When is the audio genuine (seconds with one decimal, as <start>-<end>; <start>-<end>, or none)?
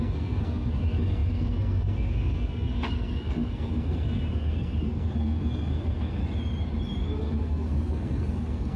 6.2-7.2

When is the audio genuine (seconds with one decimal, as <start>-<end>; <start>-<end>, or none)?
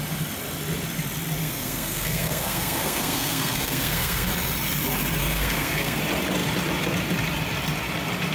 0.0-1.4; 4.3-5.2; 6.0-8.3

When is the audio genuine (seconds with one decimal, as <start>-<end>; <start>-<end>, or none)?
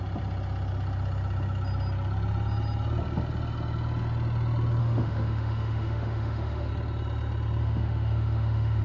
0.0-4.8; 6.7-7.6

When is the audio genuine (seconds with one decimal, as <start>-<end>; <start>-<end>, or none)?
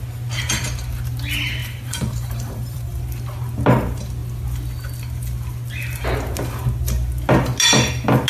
0.0-1.6; 3.0-8.3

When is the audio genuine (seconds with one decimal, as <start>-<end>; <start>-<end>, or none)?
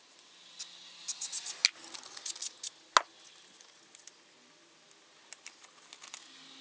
0.0-6.6